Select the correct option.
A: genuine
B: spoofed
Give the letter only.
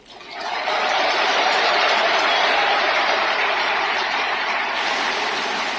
A